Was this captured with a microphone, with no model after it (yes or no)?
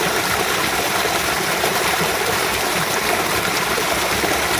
no